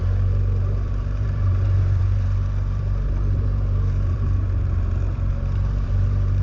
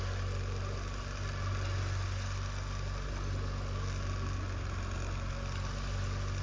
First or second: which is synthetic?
first